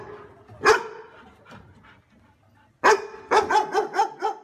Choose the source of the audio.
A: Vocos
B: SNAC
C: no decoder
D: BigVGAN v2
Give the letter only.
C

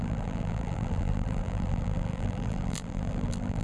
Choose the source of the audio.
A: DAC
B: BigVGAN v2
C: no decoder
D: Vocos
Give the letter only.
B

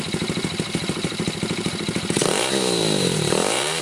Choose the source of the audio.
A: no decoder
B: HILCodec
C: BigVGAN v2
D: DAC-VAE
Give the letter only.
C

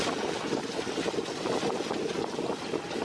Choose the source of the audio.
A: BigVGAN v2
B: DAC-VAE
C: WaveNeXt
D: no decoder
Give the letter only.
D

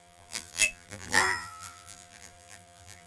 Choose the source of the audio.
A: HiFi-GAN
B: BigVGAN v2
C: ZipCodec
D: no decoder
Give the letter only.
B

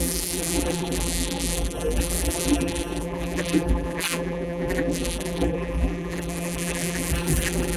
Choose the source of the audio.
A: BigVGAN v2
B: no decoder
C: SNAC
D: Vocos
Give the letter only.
A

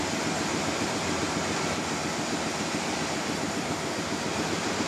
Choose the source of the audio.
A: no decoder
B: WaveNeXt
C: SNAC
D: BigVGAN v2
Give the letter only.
A